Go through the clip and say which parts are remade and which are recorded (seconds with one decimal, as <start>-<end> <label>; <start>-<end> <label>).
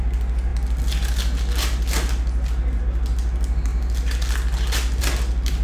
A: 0.0-5.6 recorded